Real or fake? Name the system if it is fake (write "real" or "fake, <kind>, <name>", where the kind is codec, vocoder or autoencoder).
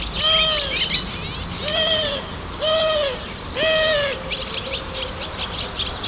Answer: real